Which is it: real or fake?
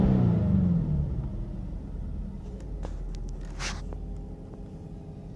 real